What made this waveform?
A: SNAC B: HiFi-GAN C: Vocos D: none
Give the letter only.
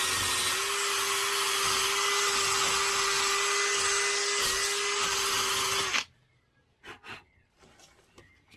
D